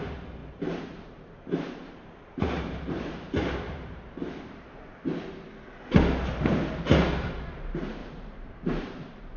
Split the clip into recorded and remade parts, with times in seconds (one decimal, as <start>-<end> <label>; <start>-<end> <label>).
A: 0.0-0.4 recorded; 0.4-4.1 remade; 4.1-8.0 recorded; 8.0-9.4 remade